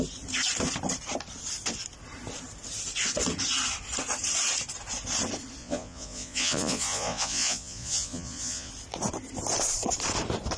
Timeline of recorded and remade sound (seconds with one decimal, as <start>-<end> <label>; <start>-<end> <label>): 0.0-5.6 recorded; 5.6-8.7 remade; 8.7-10.6 recorded